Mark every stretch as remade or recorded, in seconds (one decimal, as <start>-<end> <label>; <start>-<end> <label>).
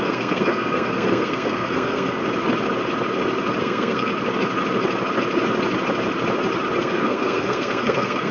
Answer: 0.0-2.2 remade; 2.2-3.6 recorded; 3.6-4.1 remade; 4.1-6.8 recorded; 6.8-8.3 remade